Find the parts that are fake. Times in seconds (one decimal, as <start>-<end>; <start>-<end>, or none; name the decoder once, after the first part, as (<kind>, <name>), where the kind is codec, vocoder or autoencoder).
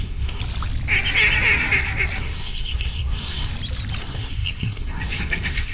0.0-0.4 (codec, SNAC); 2.2-3.5; 4.0-5.7